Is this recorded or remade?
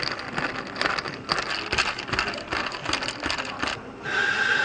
recorded